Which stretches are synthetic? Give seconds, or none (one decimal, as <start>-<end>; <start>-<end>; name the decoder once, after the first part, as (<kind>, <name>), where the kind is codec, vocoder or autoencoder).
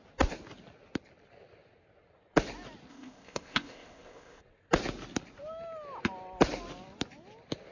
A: 2.9-4.4 (codec, ZipCodec)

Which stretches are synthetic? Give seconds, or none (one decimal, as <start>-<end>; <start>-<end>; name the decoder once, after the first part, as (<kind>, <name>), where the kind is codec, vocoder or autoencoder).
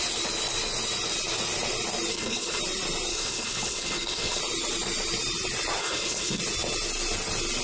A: 2.1-2.6 (codec, HILCodec); 3.1-4.4; 5.8-6.4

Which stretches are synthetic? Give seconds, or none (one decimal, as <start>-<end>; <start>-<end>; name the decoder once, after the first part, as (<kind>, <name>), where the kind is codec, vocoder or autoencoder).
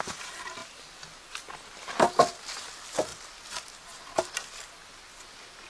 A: none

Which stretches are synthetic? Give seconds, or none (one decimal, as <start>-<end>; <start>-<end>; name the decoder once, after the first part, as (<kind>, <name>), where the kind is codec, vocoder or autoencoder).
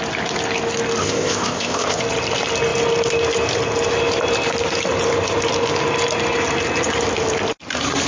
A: 1.0-2.0 (codec, ZipCodec)